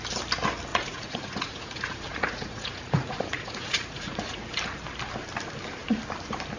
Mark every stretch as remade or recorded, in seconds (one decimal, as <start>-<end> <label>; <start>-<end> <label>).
0.0-0.7 recorded; 0.7-4.4 remade; 4.4-6.6 recorded